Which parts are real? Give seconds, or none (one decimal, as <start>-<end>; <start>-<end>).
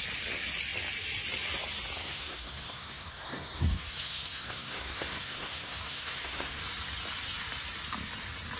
0.0-2.0; 6.6-8.6